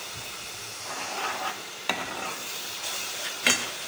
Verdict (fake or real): fake